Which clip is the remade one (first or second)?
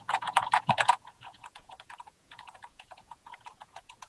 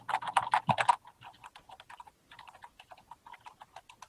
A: first